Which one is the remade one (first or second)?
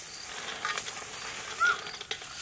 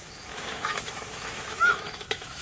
second